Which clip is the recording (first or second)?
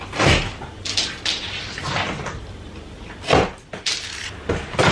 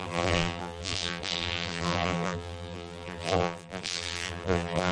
first